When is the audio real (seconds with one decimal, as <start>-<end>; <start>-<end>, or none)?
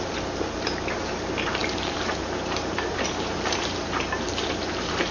0.0-1.6